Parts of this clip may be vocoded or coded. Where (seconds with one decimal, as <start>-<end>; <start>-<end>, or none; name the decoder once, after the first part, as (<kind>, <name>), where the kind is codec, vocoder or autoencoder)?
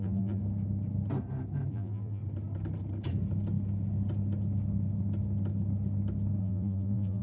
0.0-0.4 (vocoder, BigVGAN v2); 1.7-2.2; 6.4-7.2